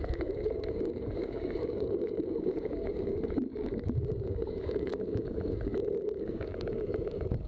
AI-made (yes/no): yes